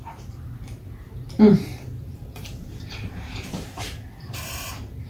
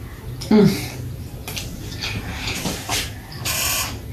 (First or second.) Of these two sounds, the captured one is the second